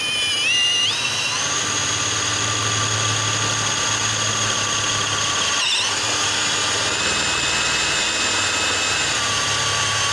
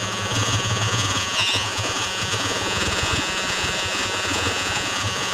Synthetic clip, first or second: second